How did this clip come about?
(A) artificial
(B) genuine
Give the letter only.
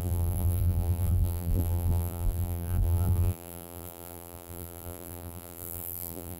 A